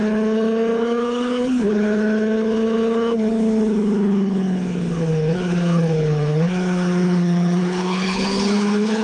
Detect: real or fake fake